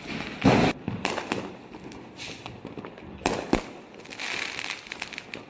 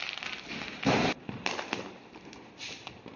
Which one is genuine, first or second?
first